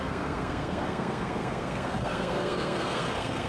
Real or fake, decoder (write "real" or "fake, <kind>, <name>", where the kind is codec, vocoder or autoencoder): fake, codec, SNAC